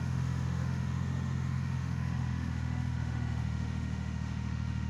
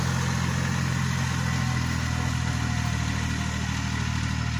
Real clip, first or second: second